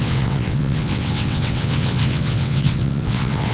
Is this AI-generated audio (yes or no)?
yes